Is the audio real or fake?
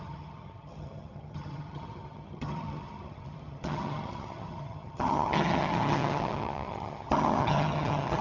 fake